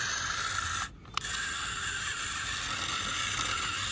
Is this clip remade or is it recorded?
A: recorded